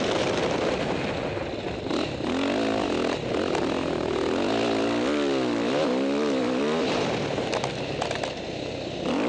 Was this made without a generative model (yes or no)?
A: yes